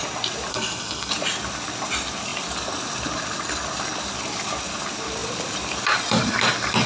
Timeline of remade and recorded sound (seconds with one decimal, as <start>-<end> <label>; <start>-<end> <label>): 0.0-0.5 recorded; 0.5-1.1 remade; 1.1-6.9 recorded